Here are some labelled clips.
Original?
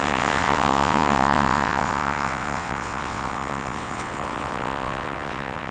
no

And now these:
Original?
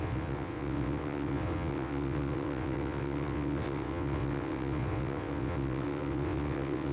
no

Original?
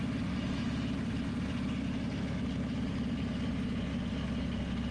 yes